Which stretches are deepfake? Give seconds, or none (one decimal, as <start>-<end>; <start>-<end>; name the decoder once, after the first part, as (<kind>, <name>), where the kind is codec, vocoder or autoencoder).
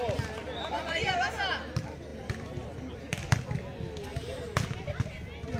2.1-3.4 (vocoder, BigVGAN v2)